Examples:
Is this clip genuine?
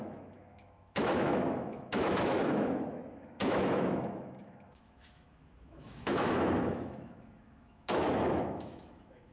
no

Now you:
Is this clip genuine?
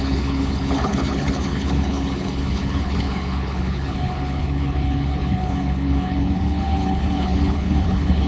no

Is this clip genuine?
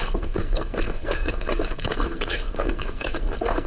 no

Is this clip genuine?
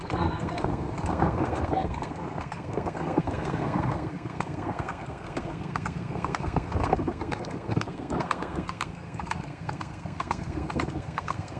no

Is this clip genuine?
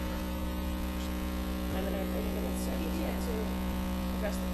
no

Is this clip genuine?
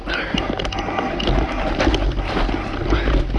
yes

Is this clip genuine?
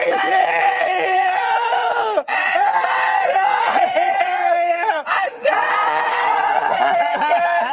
no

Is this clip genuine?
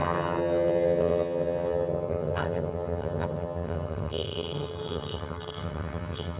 no